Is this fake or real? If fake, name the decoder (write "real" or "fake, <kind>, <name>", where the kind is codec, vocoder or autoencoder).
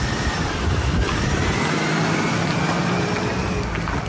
real